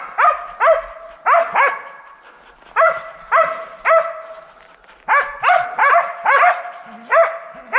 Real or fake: real